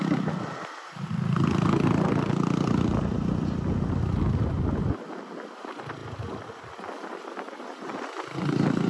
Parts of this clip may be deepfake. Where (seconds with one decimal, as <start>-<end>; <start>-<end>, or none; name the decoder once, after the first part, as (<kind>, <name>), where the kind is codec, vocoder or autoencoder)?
none